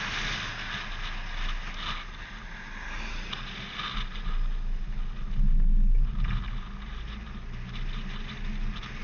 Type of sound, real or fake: real